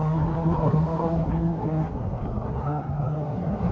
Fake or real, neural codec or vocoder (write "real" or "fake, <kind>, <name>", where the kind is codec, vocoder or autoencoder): fake, codec, SNAC